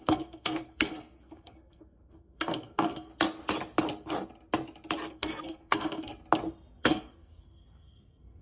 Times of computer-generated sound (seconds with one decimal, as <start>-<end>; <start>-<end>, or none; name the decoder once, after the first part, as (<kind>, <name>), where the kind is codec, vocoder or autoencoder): 0.0-3.1 (codec, SNAC); 5.1-6.1; 6.8-8.4